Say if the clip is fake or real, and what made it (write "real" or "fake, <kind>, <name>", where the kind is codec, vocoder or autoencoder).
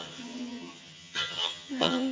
fake, vocoder, HiFi-GAN